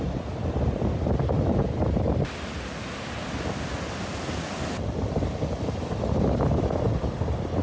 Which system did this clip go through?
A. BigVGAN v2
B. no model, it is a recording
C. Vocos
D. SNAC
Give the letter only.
B